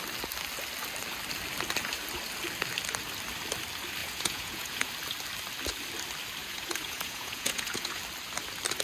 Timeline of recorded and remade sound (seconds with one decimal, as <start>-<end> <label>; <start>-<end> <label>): 0.0-4.0 recorded; 4.0-4.9 remade; 4.9-6.4 recorded; 6.4-8.0 remade; 8.0-8.8 recorded